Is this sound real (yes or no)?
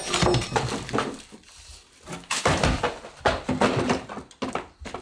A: yes